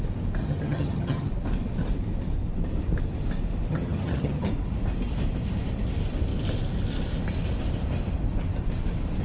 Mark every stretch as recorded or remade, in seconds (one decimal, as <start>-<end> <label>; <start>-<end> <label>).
0.0-0.4 recorded; 0.4-1.3 remade; 1.3-3.7 recorded; 3.7-4.5 remade; 4.5-9.2 recorded